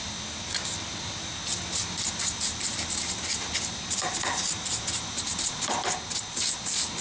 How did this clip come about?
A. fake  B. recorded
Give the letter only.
B